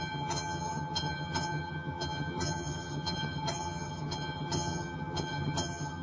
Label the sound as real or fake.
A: fake